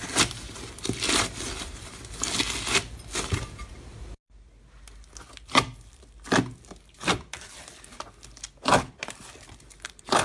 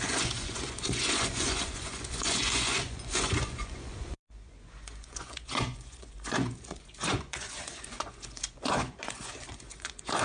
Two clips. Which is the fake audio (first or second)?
second